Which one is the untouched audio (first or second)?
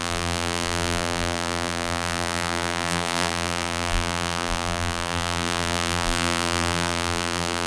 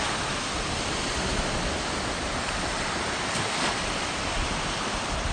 second